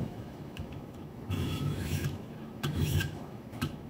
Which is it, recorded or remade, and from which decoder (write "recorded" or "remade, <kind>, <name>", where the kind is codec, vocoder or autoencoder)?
remade, autoencoder, DAC-VAE